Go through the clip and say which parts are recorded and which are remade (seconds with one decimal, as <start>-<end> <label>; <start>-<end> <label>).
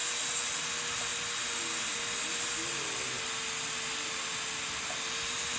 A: 0.0-5.6 recorded